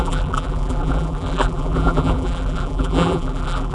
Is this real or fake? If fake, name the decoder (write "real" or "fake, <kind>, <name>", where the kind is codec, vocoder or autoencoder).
fake, vocoder, BigVGAN v2